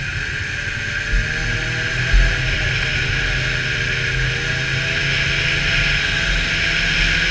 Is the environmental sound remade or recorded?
recorded